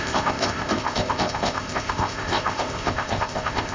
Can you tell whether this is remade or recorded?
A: remade